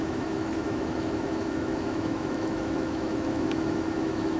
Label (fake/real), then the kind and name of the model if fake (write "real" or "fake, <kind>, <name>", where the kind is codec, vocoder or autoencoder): fake, autoencoder, DAC-VAE